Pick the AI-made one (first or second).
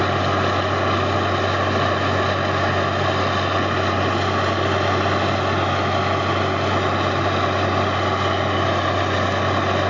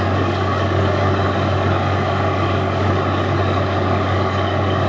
second